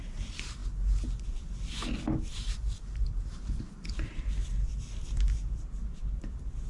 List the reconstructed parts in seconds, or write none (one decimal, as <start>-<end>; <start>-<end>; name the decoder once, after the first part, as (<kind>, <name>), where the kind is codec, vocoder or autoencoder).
0.0-0.6 (vocoder, BigVGAN v2); 2.3-6.7